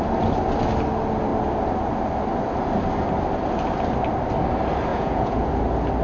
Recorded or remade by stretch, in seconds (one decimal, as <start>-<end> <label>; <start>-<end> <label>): 0.0-4.9 recorded; 4.9-5.5 remade; 5.5-6.0 recorded